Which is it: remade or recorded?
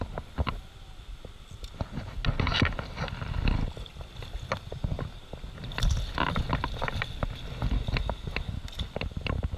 recorded